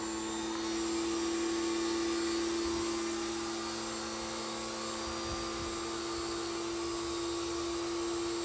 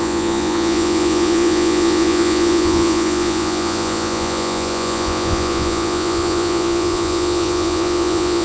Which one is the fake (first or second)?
second